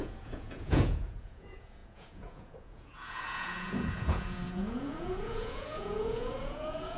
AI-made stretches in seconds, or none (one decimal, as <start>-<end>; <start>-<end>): 0.0-7.0